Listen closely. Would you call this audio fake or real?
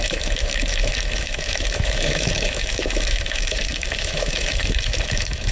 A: fake